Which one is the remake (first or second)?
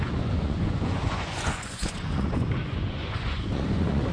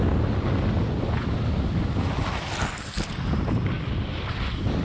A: first